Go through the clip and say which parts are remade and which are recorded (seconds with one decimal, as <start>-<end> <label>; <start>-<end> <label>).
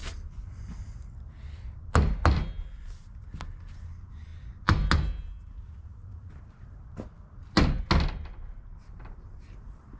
0.0-8.7 recorded; 8.7-10.0 remade